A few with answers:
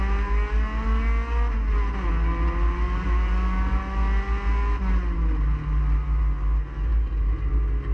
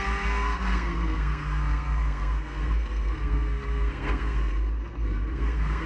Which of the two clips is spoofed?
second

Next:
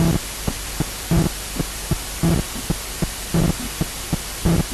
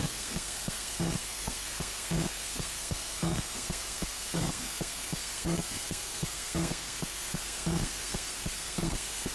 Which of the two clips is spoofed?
second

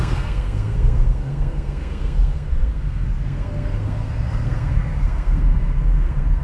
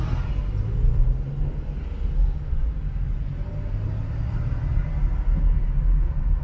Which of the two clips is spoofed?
first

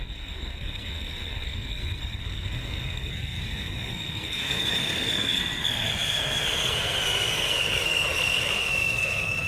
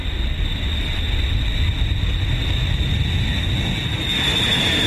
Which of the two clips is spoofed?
first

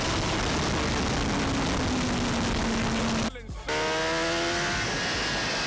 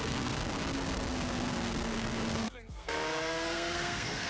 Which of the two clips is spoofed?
second